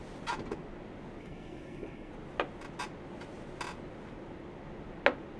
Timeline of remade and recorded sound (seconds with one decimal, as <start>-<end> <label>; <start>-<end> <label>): 0.0-1.2 recorded; 1.2-2.1 remade; 2.1-5.4 recorded